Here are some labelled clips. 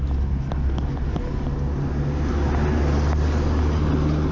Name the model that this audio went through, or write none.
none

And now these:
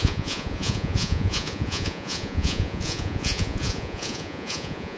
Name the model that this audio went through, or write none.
vocoder, Vocos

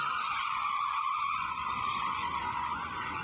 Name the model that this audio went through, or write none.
vocoder, Vocos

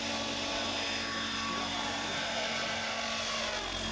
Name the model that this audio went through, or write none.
none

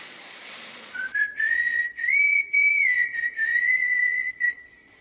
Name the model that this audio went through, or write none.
vocoder, Vocos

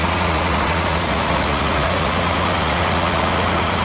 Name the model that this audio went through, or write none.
vocoder, Vocos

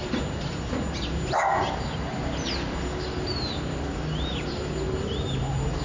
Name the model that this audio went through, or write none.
none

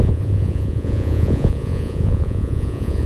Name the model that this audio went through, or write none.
vocoder, Vocos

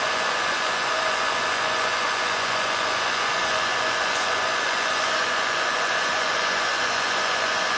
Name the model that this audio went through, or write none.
vocoder, Vocos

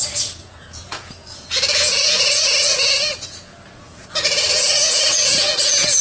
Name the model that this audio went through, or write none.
vocoder, Vocos